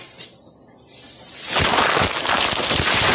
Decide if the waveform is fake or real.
real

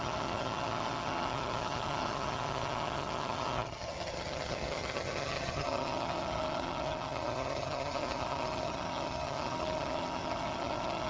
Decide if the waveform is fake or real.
fake